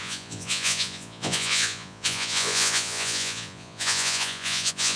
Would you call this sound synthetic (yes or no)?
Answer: yes